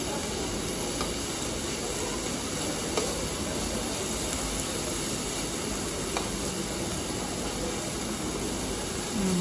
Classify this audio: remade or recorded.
recorded